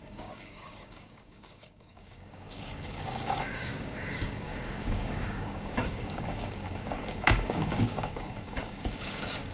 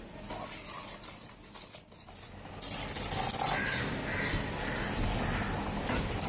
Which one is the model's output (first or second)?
first